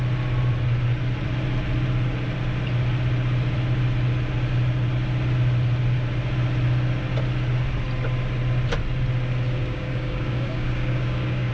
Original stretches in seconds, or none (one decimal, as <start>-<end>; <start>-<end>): 0.0-9.6

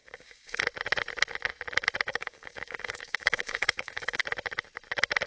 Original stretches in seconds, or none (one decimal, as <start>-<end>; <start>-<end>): 0.6-2.1; 4.2-5.3